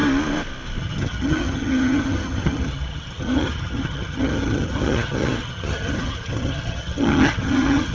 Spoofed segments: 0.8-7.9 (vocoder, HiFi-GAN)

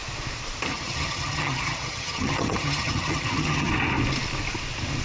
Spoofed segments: 0.7-3.7 (vocoder, HiFi-GAN)

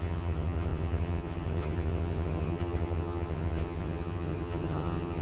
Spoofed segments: 0.0-5.2 (vocoder, HiFi-GAN)

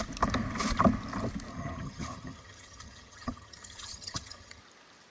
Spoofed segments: 1.5-4.6 (vocoder, HiFi-GAN)

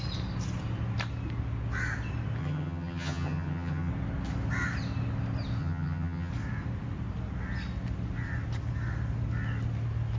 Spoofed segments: 2.4-3.9 (vocoder, HiFi-GAN); 5.6-6.3